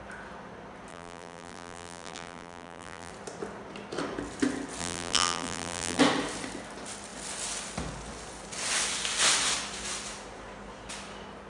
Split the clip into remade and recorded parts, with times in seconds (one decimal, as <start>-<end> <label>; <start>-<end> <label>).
0.0-0.9 recorded; 0.9-3.1 remade; 3.1-4.8 recorded; 4.8-6.0 remade; 6.0-11.5 recorded